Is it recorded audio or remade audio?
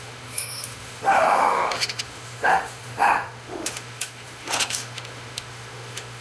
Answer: remade